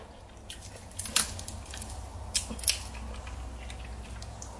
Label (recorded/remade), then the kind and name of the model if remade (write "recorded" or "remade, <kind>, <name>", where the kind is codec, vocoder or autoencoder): recorded